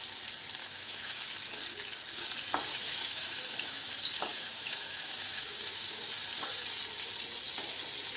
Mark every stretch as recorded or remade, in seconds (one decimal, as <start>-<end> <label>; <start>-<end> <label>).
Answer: 0.0-0.6 recorded; 0.6-1.2 remade; 1.2-2.7 recorded; 2.7-3.9 remade; 3.9-4.3 recorded; 4.3-6.1 remade; 6.1-8.2 recorded